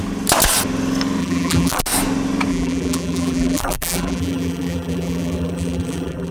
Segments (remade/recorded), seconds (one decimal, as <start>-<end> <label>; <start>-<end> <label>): 0.0-1.2 recorded; 1.2-1.8 remade; 1.8-2.5 recorded; 2.5-6.3 remade